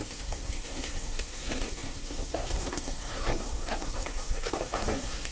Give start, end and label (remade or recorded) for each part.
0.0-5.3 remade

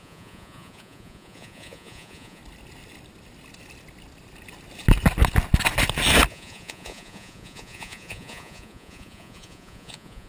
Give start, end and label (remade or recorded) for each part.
0.0-2.4 remade; 2.4-6.3 recorded; 6.3-10.3 remade